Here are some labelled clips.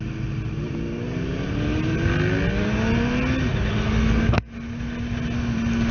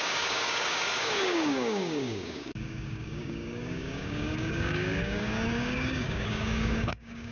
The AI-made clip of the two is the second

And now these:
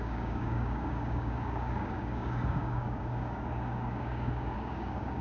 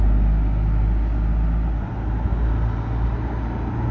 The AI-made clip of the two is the first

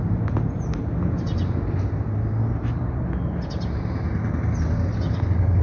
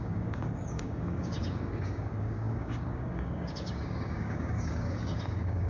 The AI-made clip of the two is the second